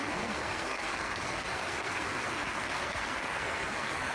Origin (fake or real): fake